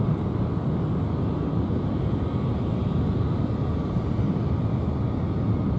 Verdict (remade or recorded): recorded